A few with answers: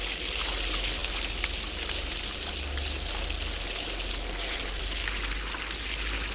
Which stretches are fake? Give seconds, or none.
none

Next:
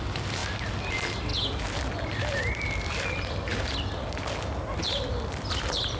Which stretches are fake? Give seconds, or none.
0.0-0.4 (vocoder, BigVGAN v2); 0.9-1.3; 1.9-3.5; 4.7-6.0